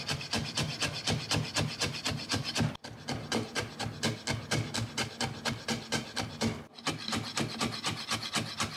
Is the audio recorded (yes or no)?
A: yes